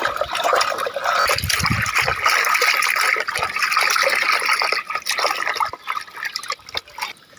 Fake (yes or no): no